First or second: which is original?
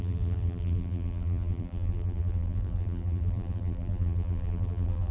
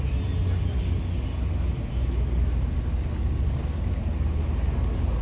second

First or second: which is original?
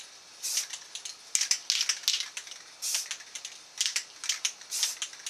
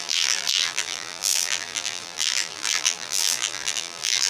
first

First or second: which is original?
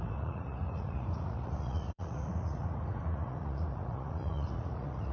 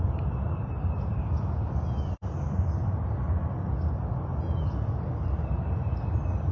second